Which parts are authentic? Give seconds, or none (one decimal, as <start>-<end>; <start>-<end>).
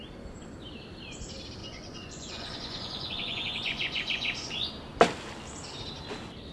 0.0-1.6; 4.7-6.5